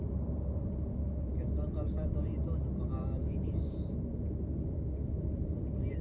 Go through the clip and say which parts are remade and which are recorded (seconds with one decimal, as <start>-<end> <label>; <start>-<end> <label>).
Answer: 0.0-3.2 recorded; 3.2-3.9 remade; 3.9-6.0 recorded